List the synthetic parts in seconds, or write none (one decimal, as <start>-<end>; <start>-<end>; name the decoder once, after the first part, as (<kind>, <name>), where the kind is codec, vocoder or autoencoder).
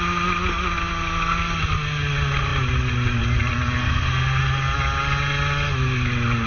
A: 3.8-4.4 (codec, SNAC)